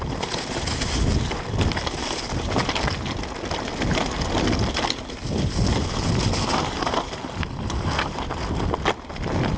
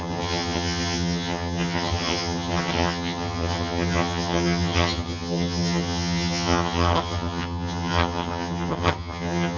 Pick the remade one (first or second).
second